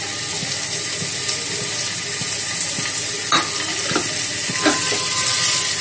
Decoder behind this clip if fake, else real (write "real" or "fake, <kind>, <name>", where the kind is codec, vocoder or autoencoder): real